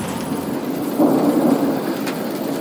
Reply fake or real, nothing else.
real